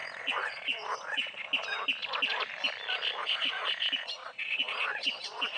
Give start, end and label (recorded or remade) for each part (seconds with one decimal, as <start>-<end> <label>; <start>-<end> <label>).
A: 0.0-1.4 remade; 1.4-3.2 recorded; 3.2-5.6 remade